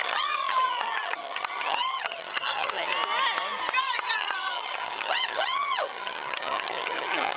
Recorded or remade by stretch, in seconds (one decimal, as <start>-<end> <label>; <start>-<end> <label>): 0.0-2.9 remade; 2.9-3.8 recorded; 3.8-7.4 remade